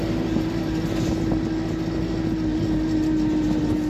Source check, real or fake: real